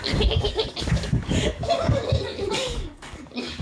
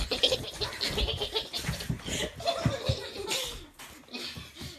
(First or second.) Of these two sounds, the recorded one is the second